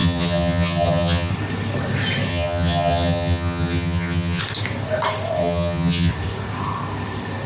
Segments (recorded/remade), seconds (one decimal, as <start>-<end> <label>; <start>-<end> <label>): 0.0-1.3 remade; 1.3-2.3 recorded; 2.3-4.4 remade; 4.4-5.4 recorded; 5.4-6.1 remade; 6.1-7.5 recorded